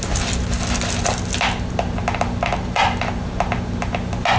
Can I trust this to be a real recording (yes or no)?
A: yes